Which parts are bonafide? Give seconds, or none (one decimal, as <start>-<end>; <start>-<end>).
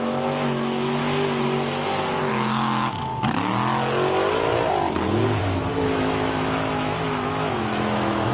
1.0-2.3; 3.1-5.4